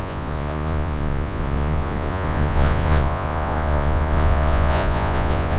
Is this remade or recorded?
remade